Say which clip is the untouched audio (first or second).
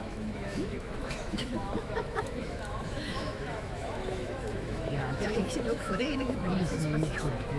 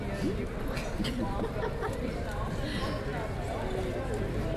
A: second